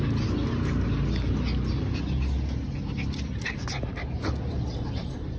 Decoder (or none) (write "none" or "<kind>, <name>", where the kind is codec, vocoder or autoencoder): none